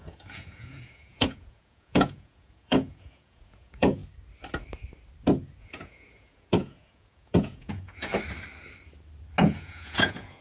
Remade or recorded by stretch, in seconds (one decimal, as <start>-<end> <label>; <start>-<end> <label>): 0.0-4.0 remade; 4.0-5.6 recorded; 5.6-8.1 remade; 8.1-9.4 recorded; 9.4-10.4 remade